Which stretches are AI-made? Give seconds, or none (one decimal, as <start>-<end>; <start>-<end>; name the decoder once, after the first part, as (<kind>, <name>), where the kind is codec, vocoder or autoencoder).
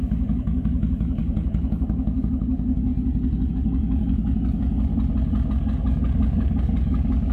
0.0-2.9 (codec, DAC); 3.5-4.9; 5.5-7.3